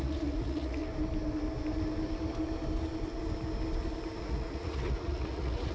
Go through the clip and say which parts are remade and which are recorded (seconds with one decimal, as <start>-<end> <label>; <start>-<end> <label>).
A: 0.0-0.8 remade; 0.8-4.2 recorded; 4.2-5.7 remade